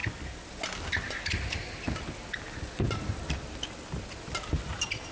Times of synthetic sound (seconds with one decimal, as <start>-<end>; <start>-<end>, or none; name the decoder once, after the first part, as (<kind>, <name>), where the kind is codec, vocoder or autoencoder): none